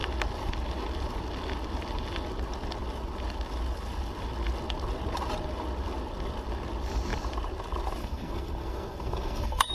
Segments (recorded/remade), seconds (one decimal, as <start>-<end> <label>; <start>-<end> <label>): 0.0-8.0 recorded; 8.0-9.7 remade

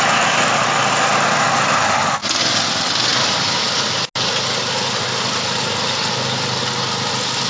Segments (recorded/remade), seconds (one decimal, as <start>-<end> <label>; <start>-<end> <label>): 0.0-7.5 recorded